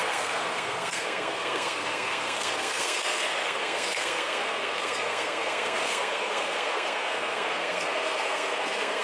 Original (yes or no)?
no